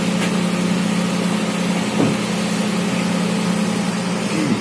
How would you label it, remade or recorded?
recorded